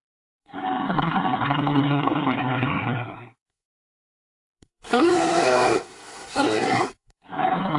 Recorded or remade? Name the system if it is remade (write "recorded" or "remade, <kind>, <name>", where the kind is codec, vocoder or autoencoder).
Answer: remade, codec, SNAC